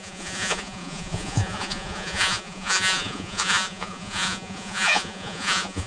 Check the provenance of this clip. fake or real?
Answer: fake